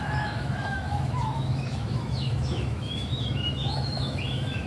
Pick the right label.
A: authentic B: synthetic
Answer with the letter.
B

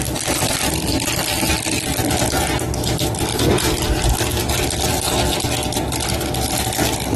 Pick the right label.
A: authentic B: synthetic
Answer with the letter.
A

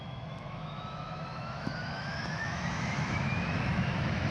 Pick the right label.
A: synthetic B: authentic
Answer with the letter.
A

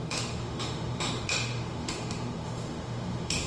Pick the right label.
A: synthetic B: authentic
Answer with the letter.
A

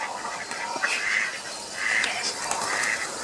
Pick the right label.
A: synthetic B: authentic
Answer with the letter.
B